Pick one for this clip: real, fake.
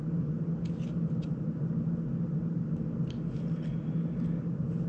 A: real